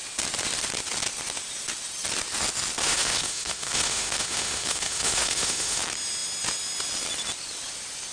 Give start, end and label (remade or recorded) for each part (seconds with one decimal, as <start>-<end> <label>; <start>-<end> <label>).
0.0-2.8 recorded; 2.8-5.8 remade; 5.8-8.1 recorded